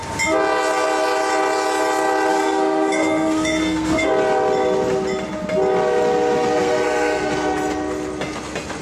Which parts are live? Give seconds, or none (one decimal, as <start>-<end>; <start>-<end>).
0.0-2.3; 4.1-6.6; 7.3-8.8